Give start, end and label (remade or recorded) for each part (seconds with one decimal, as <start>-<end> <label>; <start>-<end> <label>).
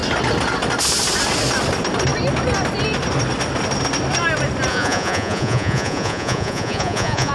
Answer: 0.0-4.7 recorded; 4.7-7.3 remade